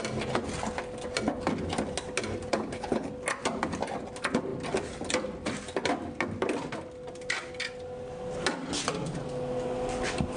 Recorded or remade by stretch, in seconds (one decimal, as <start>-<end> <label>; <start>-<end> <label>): 0.0-2.5 recorded; 2.5-3.1 remade; 3.1-10.4 recorded